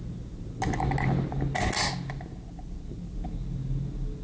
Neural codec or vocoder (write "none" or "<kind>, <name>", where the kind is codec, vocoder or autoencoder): none